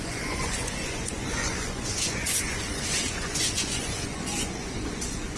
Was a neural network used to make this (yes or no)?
yes